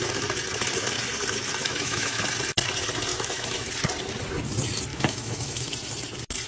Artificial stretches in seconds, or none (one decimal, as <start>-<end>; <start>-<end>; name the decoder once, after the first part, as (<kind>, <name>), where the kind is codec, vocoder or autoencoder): 1.6-2.2 (autoencoder, DAC-VAE); 3.1-3.7; 4.9-5.7